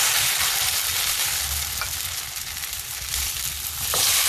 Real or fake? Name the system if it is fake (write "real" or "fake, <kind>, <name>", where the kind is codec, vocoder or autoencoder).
real